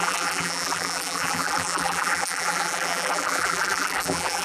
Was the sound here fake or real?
fake